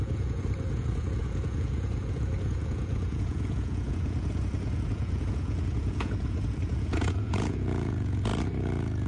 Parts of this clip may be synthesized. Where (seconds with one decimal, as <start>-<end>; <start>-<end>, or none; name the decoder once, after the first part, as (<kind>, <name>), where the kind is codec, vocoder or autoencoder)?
0.0-8.3 (vocoder, Vocos)